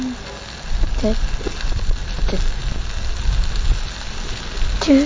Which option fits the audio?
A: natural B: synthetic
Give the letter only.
A